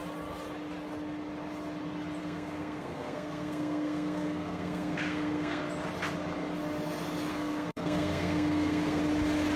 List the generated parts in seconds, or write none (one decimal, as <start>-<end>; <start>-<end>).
2.2-5.6; 7.3-9.0